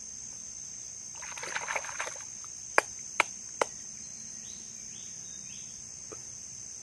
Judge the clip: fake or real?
fake